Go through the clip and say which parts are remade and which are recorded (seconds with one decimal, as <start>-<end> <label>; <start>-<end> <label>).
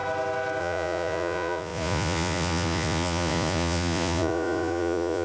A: 0.0-0.6 recorded; 0.6-5.2 remade